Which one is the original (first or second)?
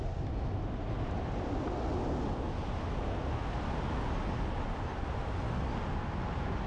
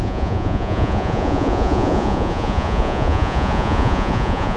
first